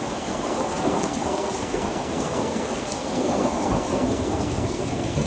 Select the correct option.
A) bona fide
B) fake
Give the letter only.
B